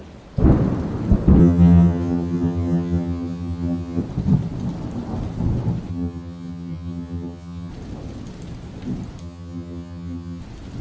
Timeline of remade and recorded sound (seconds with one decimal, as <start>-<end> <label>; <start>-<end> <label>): 0.0-1.4 recorded; 1.4-4.0 remade; 4.0-5.9 recorded; 5.9-7.7 remade; 7.7-9.2 recorded; 9.2-10.4 remade; 10.4-10.8 recorded